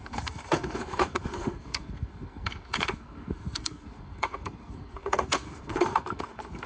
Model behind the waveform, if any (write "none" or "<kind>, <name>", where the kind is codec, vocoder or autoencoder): codec, SNAC